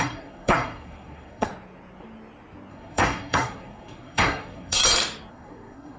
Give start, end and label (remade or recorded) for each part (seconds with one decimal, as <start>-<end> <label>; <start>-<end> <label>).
0.0-1.5 remade; 1.5-2.7 recorded; 2.7-4.8 remade; 4.8-5.3 recorded; 5.3-6.0 remade

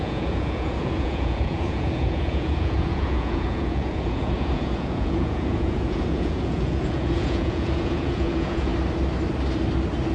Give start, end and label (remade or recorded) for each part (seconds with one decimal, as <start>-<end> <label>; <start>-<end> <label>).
0.0-8.7 remade; 8.7-10.1 recorded

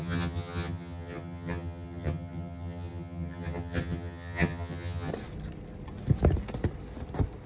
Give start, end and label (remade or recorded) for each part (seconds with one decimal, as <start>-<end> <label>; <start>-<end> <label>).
0.0-5.1 remade; 5.1-7.5 recorded

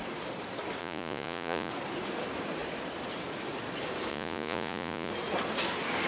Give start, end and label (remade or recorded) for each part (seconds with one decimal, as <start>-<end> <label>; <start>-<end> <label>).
0.0-0.8 recorded; 0.8-1.7 remade; 1.7-4.1 recorded; 4.1-5.1 remade; 5.1-6.1 recorded

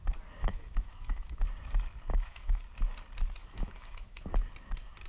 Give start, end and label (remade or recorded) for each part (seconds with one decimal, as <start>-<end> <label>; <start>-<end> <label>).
0.0-0.5 recorded; 0.5-1.4 remade; 1.4-2.1 recorded; 2.1-2.6 remade; 2.6-3.4 recorded; 3.4-4.2 remade; 4.2-5.1 recorded

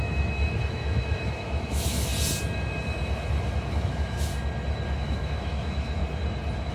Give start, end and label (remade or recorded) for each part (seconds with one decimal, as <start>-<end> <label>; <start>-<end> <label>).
0.0-2.1 remade; 2.1-3.7 recorded; 3.7-4.3 remade; 4.3-5.0 recorded; 5.0-6.0 remade; 6.0-6.7 recorded